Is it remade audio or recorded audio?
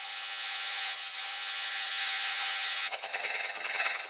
remade